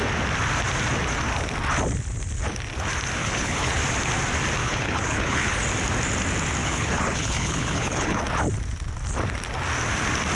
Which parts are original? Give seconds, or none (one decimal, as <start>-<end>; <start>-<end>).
0.0-3.2; 3.8-4.6; 5.5-6.6; 8.2-10.3